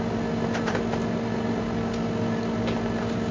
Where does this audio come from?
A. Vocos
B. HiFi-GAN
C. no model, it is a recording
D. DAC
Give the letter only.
C